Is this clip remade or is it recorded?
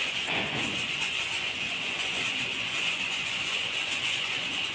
remade